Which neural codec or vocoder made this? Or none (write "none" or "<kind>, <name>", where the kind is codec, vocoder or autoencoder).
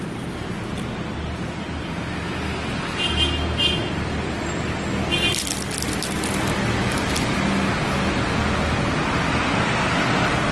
none